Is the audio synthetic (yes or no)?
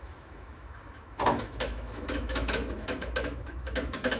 yes